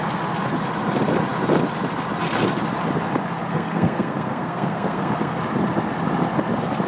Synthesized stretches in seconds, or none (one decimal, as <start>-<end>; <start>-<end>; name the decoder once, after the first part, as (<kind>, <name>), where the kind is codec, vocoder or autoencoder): 3.5-5.4 (codec, SNAC)